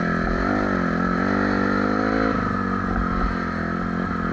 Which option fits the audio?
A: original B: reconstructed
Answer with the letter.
A